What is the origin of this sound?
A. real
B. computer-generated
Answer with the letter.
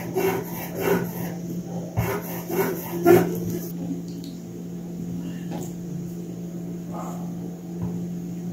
A